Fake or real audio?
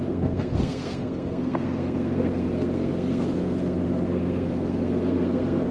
fake